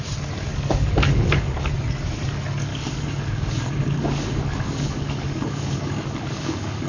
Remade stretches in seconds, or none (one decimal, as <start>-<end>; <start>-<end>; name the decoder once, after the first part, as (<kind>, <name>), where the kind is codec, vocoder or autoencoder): 0.5-1.7 (codec, DAC); 2.7-6.9